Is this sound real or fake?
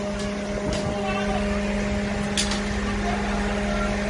real